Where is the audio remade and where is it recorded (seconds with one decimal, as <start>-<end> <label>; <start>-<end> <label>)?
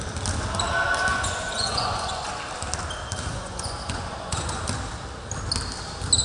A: 0.0-1.1 recorded; 1.1-2.3 remade; 2.3-3.3 recorded; 3.3-4.6 remade; 4.6-6.2 recorded